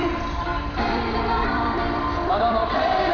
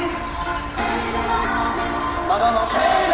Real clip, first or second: second